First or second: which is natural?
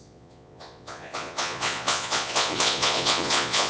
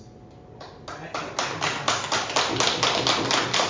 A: second